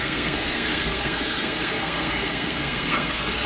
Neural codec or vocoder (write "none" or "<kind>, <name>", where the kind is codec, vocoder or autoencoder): codec, SNAC